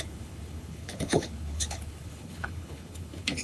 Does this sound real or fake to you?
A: fake